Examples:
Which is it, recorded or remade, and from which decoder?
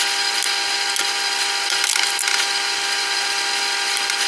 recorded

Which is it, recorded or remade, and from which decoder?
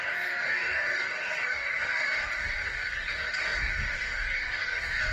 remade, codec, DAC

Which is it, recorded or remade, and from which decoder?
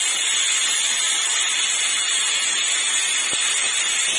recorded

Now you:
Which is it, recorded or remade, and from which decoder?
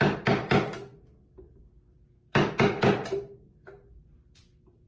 recorded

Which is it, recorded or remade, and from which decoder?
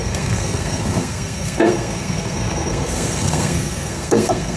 remade, codec, SNAC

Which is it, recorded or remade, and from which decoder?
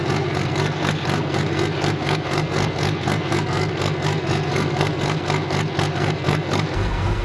remade, codec, SNAC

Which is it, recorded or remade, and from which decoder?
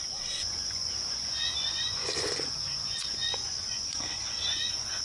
remade, vocoder, Vocos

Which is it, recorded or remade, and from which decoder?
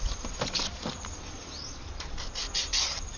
recorded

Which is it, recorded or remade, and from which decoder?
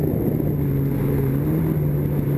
recorded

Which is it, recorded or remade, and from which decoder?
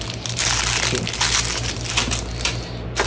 recorded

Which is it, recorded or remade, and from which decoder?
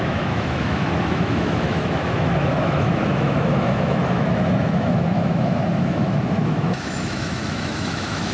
remade, autoencoder, DAC-VAE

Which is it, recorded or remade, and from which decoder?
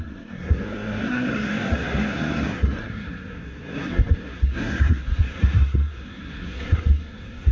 remade, codec, SNAC